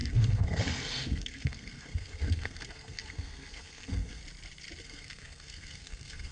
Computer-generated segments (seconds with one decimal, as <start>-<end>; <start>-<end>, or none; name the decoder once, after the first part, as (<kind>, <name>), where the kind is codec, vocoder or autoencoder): 0.0-4.2 (codec, SNAC); 4.8-6.3